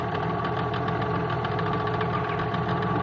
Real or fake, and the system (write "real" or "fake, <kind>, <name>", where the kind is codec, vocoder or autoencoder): real